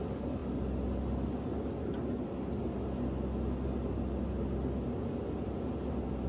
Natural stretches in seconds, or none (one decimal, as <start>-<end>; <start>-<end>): 0.0-6.3